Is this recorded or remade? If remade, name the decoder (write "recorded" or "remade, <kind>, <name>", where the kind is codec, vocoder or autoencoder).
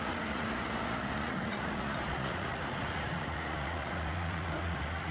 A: remade, vocoder, Vocos